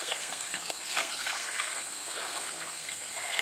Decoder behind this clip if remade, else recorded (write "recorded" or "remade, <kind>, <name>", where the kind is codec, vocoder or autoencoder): remade, codec, SNAC